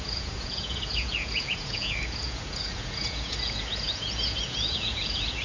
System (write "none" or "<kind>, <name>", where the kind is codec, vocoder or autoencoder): vocoder, Vocos